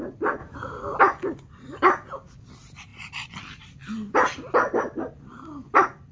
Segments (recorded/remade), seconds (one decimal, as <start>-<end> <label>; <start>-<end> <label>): 0.0-0.4 recorded; 0.4-1.0 remade; 1.0-6.1 recorded